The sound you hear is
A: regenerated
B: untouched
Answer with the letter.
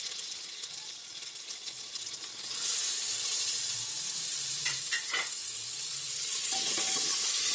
A